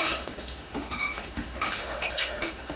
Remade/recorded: remade